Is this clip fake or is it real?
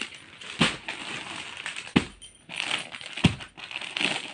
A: real